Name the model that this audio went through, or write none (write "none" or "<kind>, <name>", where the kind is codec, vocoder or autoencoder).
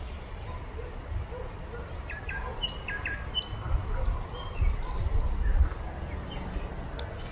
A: none